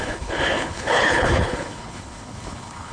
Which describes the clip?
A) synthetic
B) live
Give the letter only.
A